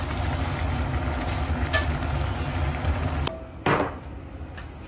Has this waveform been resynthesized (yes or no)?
no